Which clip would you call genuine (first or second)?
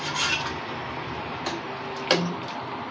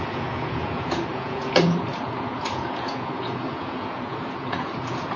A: first